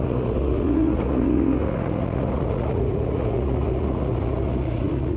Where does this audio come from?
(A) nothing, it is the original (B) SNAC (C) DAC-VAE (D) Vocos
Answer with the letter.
D